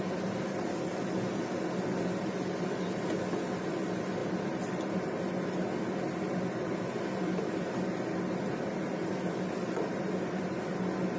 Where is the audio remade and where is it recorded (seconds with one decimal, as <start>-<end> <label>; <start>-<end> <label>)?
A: 0.0-11.2 recorded